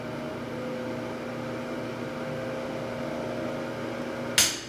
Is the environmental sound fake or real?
real